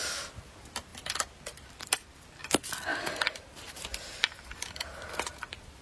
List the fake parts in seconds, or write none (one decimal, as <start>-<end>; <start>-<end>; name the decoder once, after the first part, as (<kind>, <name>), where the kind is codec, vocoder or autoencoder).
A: 0.0-0.5 (vocoder, BigVGAN v2); 0.9-1.4; 2.9-5.3